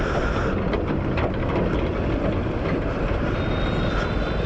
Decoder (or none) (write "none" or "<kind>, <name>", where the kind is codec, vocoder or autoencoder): none